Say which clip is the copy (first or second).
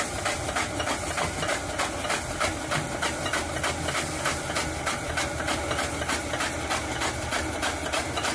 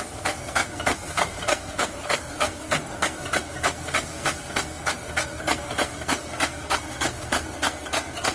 second